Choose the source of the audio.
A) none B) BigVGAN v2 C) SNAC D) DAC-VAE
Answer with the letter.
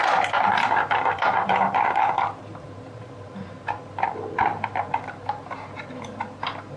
B